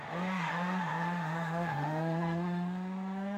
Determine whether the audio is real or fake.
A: fake